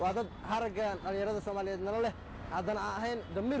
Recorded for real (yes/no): yes